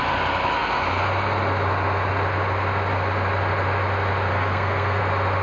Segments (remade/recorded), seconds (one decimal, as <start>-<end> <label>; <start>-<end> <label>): 0.0-4.3 recorded; 4.3-5.0 remade; 5.0-5.4 recorded

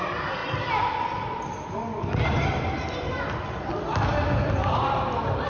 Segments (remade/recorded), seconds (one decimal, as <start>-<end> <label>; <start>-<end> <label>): 0.0-5.5 recorded